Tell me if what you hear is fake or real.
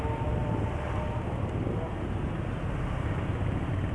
real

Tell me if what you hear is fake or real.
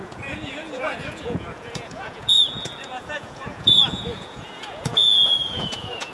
fake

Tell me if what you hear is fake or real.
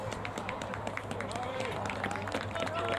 real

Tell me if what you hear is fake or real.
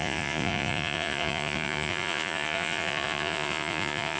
fake